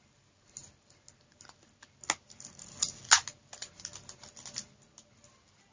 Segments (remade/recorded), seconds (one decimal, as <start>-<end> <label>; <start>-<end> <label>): 0.0-5.7 recorded